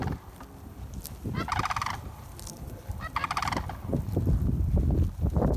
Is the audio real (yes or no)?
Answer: yes